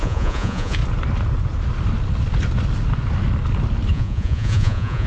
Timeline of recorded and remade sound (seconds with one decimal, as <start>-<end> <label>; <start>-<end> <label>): 0.0-0.8 remade; 0.8-3.9 recorded; 3.9-5.1 remade